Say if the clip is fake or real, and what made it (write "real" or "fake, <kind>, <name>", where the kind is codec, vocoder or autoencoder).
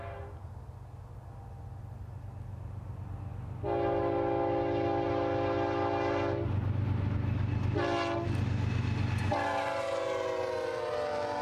real